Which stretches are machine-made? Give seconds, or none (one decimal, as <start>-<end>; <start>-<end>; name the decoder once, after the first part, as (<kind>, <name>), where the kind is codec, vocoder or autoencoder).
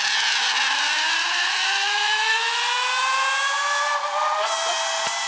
1.2-2.6 (autoencoder, DAC-VAE)